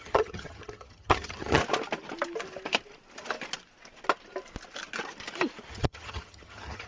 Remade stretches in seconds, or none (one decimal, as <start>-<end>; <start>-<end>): 0.0-1.6; 5.7-6.9